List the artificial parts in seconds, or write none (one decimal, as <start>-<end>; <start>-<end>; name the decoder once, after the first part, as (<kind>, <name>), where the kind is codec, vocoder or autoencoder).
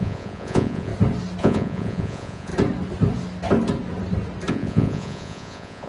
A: 0.0-0.9 (vocoder, Vocos); 1.4-2.5; 4.5-5.9